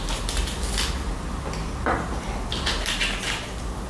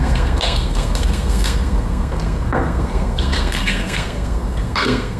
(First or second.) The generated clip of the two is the second